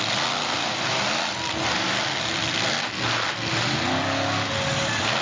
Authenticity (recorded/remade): recorded